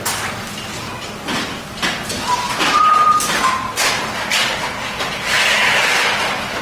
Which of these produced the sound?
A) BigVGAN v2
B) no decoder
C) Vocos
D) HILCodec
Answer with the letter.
B